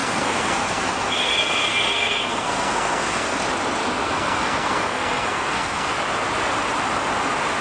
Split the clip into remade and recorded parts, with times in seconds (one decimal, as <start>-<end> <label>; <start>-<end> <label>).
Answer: 0.0-3.4 remade; 3.4-4.0 recorded; 4.0-5.9 remade; 5.9-7.6 recorded